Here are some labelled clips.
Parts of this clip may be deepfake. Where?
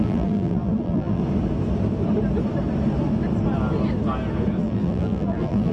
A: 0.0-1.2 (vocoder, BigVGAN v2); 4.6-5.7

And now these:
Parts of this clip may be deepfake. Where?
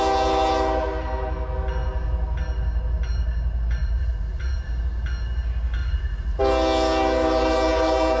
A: 3.8-4.6 (vocoder, Vocos); 5.8-6.4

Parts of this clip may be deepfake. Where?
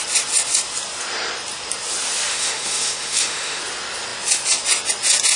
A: 2.3-3.6 (autoencoder, DAC-VAE)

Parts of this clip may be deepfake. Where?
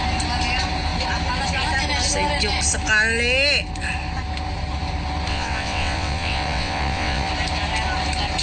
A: 5.3-7.3 (vocoder, WaveNeXt)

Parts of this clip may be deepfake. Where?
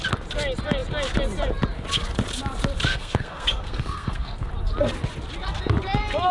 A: 2.9-4.5 (codec, SNAC)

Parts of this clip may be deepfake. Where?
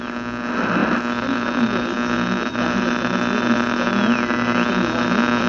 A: none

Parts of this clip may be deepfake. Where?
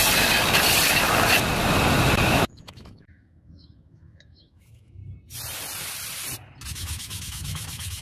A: 2.3-5.0 (autoencoder, DAC-VAE); 6.7-8.0